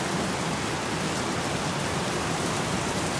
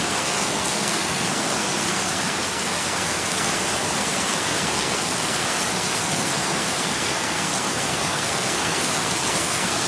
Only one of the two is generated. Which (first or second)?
second